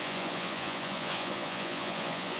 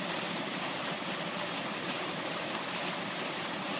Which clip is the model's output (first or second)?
first